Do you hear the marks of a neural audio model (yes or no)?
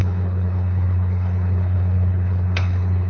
yes